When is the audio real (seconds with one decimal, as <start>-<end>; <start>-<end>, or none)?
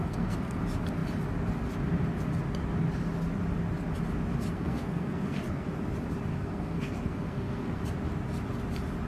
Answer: 0.6-4.5; 5.7-6.3; 7.8-9.1